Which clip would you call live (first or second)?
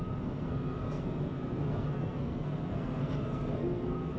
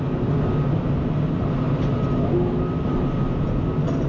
second